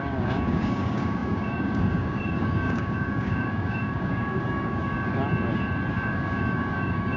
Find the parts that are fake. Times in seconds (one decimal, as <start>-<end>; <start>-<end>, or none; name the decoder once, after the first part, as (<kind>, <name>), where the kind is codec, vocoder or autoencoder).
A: 0.0-5.1 (codec, DAC); 5.9-7.2